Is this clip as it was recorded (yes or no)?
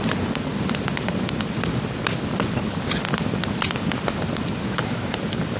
yes